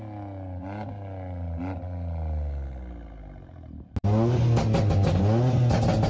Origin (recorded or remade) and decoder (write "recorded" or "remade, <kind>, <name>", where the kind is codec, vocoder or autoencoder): recorded